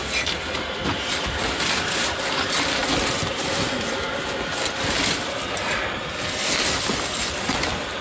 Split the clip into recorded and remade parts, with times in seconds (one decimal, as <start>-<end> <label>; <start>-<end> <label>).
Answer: 0.0-8.0 recorded